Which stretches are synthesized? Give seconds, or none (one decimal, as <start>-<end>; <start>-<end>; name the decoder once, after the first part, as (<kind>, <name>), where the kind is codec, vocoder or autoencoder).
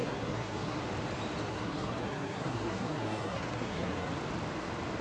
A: 0.0-0.8 (codec, SNAC); 1.5-4.1